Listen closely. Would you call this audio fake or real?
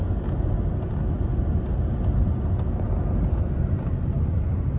real